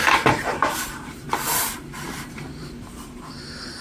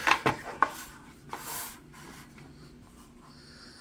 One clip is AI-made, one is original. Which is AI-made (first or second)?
first